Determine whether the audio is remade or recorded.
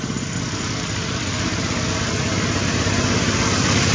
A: recorded